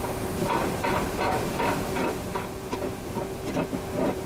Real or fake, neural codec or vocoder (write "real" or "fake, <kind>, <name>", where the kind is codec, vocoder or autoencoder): real